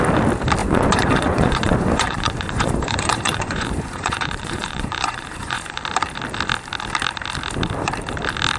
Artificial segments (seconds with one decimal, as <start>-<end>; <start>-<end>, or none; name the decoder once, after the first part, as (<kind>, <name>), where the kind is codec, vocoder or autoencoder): 0.6-5.8 (vocoder, Vocos)